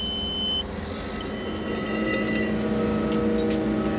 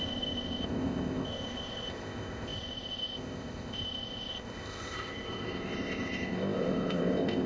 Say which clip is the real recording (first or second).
first